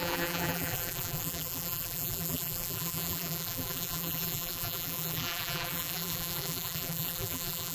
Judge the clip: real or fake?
fake